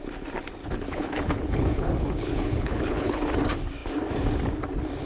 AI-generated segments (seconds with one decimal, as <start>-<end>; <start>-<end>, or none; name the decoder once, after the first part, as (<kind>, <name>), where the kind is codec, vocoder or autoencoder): 0.6-3.2 (codec, HILCodec)